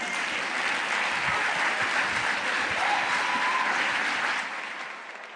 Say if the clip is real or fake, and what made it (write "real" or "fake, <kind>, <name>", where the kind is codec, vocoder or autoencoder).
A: real